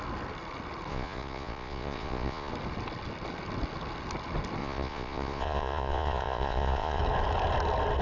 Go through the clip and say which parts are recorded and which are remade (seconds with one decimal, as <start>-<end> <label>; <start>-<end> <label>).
0.0-0.9 recorded; 0.9-2.5 remade; 2.5-4.6 recorded; 4.6-7.0 remade; 7.0-8.0 recorded